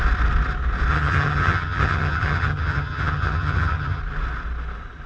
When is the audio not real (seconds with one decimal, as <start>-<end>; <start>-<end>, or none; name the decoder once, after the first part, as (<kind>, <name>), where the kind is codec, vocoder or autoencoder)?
0.9-4.0 (vocoder, HiFi-GAN)